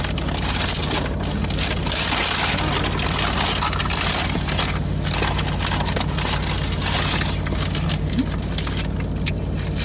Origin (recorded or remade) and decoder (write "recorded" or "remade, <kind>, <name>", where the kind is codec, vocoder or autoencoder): recorded